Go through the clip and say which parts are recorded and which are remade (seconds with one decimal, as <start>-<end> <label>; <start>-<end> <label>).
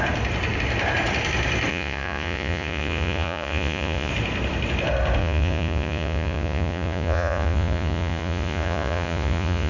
0.0-1.7 recorded; 1.7-4.1 remade; 4.1-5.2 recorded; 5.2-9.7 remade